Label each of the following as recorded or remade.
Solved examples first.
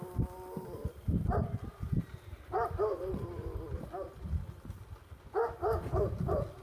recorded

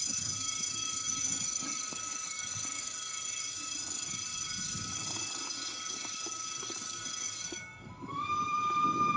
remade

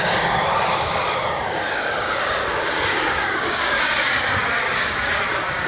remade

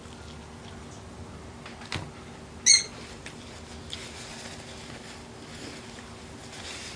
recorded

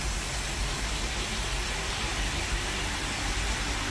recorded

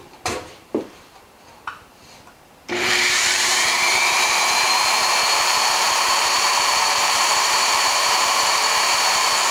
remade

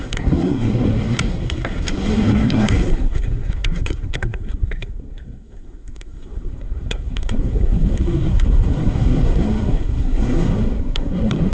remade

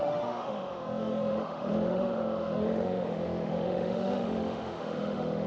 remade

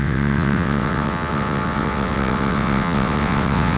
remade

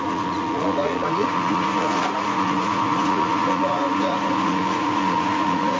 remade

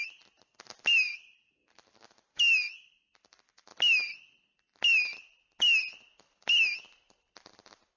recorded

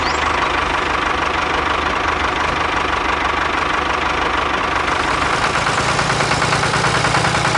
recorded